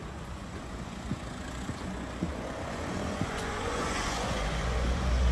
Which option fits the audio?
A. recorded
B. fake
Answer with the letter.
B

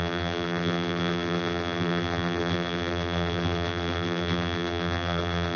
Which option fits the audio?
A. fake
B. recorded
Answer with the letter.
A